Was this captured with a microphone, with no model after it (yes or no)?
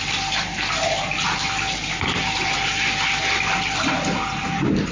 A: yes